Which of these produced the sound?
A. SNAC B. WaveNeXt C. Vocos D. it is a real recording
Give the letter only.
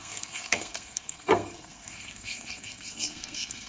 A